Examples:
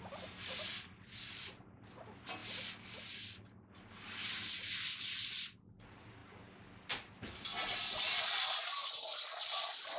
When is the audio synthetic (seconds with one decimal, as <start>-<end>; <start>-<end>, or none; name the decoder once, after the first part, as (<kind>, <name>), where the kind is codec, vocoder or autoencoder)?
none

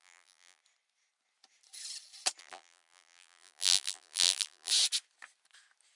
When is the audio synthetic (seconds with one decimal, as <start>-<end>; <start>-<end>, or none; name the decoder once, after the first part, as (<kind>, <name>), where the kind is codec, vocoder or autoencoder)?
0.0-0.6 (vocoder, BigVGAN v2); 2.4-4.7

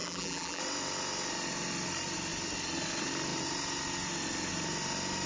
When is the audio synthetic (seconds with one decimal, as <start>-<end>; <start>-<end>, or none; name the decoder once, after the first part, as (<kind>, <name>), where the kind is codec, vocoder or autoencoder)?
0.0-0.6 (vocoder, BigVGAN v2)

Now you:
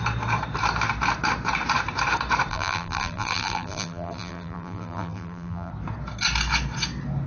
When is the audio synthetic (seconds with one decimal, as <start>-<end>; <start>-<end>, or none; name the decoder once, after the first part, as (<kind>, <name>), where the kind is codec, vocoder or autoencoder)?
2.5-5.7 (vocoder, BigVGAN v2)